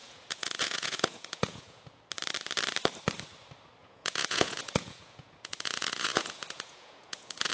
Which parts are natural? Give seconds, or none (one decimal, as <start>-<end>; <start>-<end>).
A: 2.0-3.8